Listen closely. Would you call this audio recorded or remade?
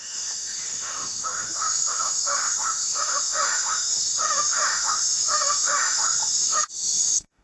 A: remade